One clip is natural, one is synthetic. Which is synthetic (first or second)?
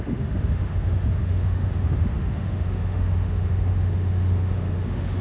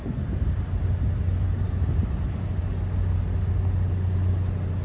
first